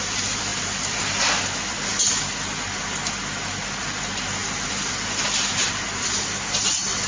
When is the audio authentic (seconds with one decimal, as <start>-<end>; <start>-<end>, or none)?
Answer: 0.0-7.1